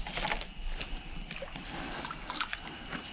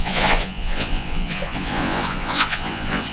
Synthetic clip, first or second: second